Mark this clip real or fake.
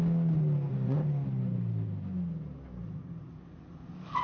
real